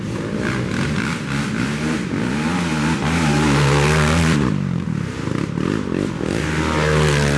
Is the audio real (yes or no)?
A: yes